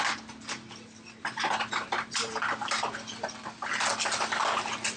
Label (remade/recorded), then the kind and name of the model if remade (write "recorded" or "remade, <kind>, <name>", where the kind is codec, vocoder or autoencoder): recorded